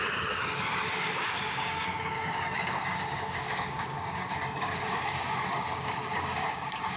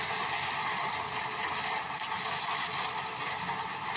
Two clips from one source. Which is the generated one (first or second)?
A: first